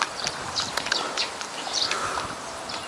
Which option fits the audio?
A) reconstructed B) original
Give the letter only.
A